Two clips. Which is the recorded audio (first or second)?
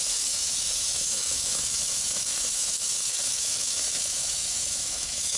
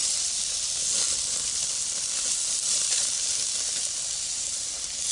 second